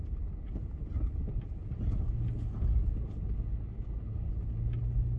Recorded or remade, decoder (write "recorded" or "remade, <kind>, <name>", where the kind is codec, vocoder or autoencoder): recorded